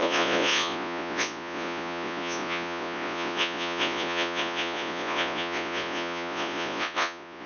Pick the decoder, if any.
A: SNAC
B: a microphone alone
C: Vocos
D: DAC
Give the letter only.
C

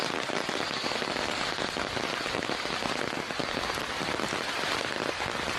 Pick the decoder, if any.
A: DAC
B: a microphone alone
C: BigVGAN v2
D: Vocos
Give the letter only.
B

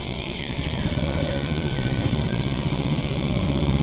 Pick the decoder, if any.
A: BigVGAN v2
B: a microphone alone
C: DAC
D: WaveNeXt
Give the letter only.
D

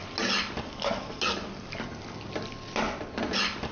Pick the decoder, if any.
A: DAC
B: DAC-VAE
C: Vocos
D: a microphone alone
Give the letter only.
D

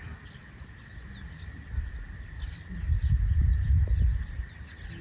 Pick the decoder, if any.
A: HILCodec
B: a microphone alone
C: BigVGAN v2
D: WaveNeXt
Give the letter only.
B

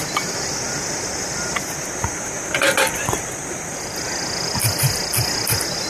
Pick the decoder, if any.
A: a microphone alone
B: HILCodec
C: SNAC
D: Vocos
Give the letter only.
A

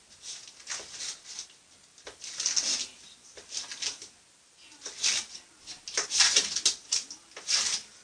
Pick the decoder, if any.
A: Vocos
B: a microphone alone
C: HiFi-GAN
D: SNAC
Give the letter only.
B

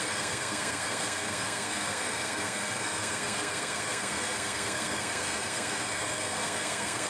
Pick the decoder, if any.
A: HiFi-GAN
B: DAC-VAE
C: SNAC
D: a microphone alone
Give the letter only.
C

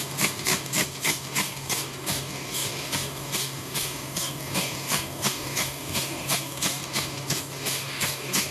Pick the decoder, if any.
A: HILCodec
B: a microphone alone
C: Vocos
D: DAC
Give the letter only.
D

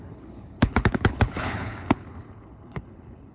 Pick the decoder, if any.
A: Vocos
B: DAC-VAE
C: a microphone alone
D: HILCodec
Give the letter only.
D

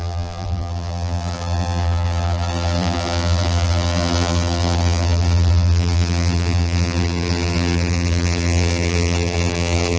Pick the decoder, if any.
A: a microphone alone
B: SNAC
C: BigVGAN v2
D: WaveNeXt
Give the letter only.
C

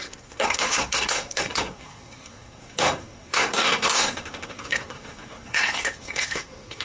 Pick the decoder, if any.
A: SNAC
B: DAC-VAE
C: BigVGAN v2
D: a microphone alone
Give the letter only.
A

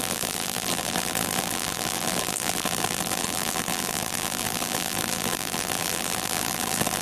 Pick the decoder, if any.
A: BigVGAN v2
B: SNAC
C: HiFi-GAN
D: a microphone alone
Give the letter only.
A